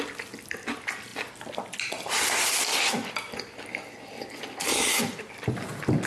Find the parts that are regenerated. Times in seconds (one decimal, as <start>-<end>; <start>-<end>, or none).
none